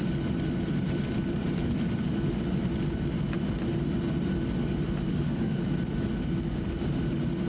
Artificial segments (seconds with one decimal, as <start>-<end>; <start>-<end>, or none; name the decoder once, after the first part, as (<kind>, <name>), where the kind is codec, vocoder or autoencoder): 5.1-5.6 (autoencoder, DAC-VAE)